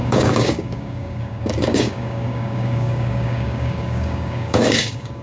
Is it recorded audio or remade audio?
remade